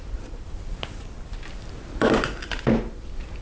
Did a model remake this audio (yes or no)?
no